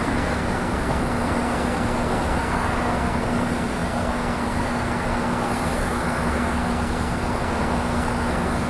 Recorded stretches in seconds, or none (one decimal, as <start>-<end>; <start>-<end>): none